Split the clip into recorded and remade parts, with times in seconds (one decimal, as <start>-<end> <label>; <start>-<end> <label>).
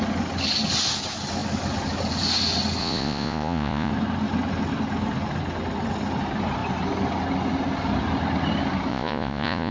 0.0-2.8 recorded; 2.8-3.9 remade; 3.9-8.9 recorded; 8.9-9.7 remade